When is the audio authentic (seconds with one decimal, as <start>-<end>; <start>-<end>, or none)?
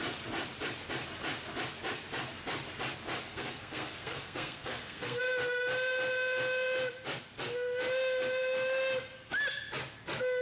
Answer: 0.0-3.3; 5.2-10.4